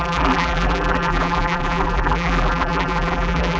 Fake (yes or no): yes